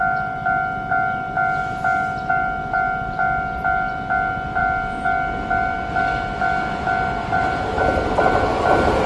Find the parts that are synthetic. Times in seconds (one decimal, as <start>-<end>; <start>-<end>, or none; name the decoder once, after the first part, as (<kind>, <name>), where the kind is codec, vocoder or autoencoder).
none